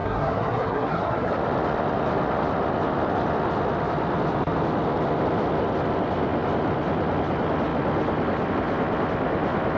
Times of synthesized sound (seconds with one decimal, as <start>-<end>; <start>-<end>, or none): 0.0-1.3